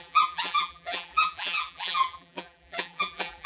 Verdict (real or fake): fake